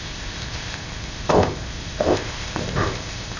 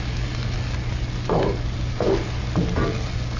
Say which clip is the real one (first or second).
second